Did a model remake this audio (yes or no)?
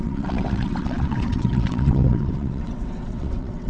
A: yes